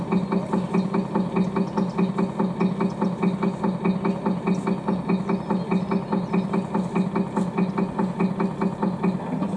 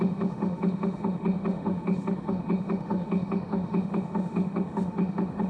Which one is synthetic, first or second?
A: second